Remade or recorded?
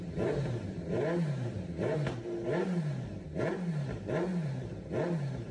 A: remade